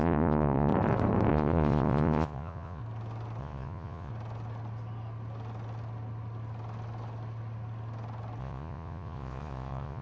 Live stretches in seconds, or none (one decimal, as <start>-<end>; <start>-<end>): 0.7-1.3; 2.8-3.4; 4.1-8.4